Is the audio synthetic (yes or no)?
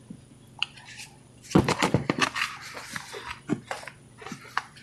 yes